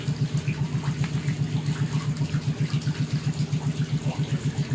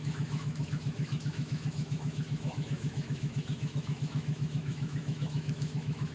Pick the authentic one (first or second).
first